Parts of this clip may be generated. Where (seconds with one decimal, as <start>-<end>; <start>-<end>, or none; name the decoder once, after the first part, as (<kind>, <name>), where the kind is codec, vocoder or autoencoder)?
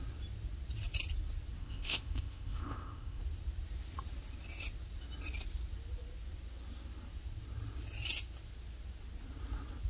1.6-3.2 (codec, ZipCodec)